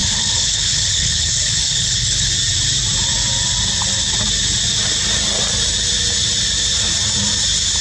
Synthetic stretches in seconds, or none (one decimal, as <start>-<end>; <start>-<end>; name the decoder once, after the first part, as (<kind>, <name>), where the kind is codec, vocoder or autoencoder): 0.0-2.3 (codec, HILCodec)